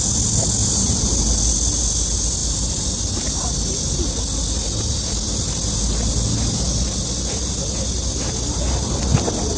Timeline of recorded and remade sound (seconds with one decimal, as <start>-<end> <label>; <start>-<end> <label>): 0.0-0.6 recorded; 0.6-1.2 remade; 1.2-9.6 recorded